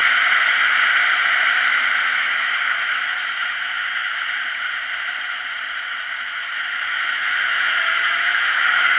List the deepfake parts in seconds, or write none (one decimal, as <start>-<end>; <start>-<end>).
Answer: 2.1-4.2; 6.4-9.0